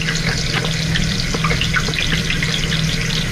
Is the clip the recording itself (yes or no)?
yes